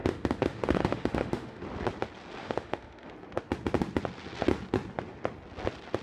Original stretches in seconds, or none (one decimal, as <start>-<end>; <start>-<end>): 1.6-2.4; 3.1-6.0

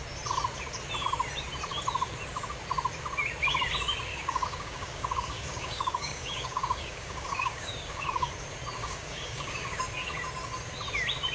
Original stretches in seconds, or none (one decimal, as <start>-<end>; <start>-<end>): 0.0-4.1; 8.3-8.8; 9.8-11.3